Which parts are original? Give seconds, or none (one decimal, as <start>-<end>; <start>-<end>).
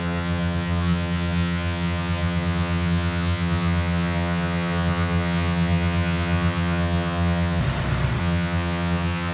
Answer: 7.6-8.2